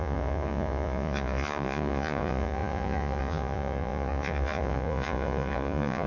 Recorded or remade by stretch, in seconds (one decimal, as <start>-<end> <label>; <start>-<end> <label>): 0.0-6.1 remade